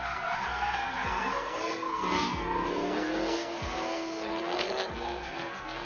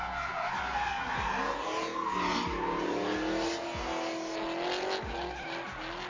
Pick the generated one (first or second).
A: first